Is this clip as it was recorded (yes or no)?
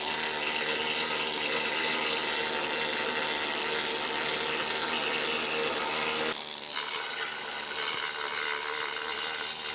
yes